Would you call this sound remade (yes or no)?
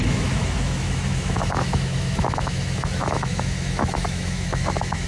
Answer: yes